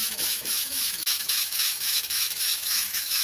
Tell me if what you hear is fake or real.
fake